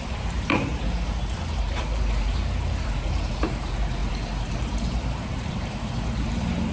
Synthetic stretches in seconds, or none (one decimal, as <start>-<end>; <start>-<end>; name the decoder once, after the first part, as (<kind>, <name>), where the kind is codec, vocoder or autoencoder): 0.0-0.7 (vocoder, BigVGAN v2); 1.6-6.7